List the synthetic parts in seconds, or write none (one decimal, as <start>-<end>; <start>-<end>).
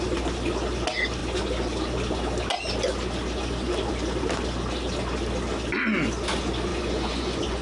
6.7-7.6